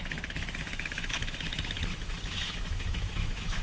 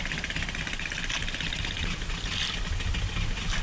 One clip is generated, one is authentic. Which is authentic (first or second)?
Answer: second